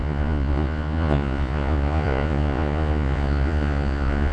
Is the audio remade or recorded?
remade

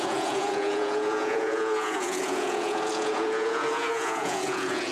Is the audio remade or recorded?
remade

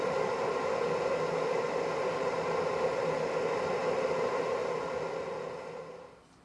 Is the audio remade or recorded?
recorded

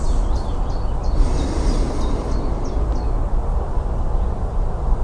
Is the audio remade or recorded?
recorded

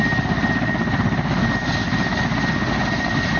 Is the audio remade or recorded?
recorded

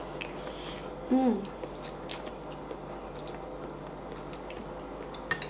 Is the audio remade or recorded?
recorded